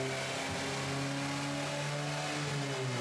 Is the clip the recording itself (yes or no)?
yes